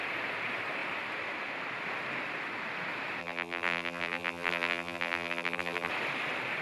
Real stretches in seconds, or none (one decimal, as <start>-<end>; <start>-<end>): 0.0-3.2; 5.9-6.6